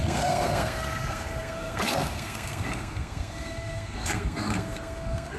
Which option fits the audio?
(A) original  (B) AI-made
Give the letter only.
B